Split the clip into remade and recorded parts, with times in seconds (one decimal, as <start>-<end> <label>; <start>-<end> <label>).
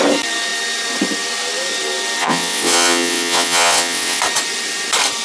0.0-2.2 recorded; 2.2-4.2 remade; 4.2-5.2 recorded